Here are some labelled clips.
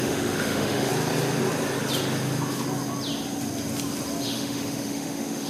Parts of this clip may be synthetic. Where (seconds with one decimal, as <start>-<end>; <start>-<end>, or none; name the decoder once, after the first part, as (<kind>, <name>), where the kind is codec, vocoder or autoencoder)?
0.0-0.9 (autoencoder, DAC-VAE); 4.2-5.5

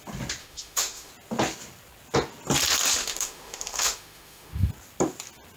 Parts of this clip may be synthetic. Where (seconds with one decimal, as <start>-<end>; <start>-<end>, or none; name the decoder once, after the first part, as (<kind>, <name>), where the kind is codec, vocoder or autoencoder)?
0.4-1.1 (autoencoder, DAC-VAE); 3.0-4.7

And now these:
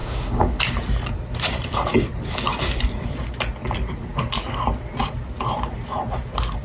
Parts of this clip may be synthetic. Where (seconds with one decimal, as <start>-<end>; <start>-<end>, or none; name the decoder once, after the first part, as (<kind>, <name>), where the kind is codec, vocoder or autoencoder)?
0.0-0.6 (autoencoder, DAC-VAE)

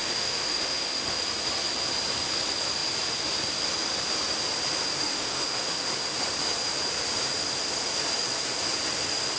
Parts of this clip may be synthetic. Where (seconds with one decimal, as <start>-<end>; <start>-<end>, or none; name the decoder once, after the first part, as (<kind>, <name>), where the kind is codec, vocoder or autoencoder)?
0.0-1.2 (autoencoder, DAC-VAE); 5.0-5.9

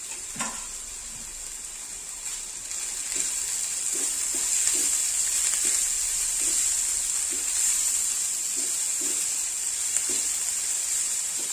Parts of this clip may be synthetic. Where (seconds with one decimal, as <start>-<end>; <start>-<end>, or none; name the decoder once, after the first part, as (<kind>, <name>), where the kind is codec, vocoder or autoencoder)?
none

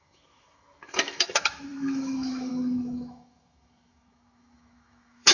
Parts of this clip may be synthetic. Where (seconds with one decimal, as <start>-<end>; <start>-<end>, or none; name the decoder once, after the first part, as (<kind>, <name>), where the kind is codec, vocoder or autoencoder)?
0.0-5.3 (autoencoder, DAC-VAE)

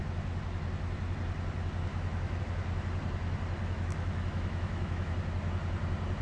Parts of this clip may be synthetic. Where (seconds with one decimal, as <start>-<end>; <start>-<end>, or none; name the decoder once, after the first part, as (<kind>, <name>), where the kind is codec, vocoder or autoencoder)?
1.9-2.4 (autoencoder, DAC-VAE); 3.6-5.1

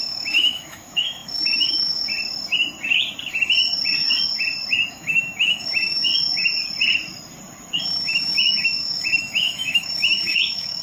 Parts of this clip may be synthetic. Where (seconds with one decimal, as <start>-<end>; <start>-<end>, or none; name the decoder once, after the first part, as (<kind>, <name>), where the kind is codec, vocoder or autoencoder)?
0.0-2.1 (autoencoder, DAC-VAE); 4.9-6.1; 7.8-10.8